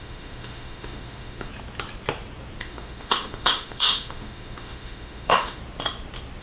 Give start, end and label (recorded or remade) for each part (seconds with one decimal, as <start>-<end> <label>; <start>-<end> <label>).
0.0-1.5 remade; 1.5-2.6 recorded; 2.6-5.6 remade; 5.6-6.4 recorded